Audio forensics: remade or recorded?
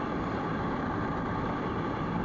recorded